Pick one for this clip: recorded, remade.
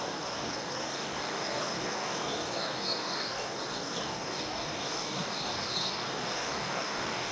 remade